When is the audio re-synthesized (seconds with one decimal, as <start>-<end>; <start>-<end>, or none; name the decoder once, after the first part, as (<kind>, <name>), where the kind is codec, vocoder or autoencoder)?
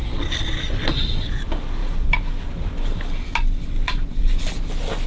none